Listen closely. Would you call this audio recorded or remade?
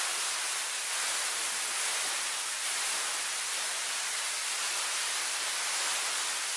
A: recorded